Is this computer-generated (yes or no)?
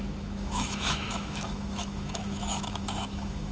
yes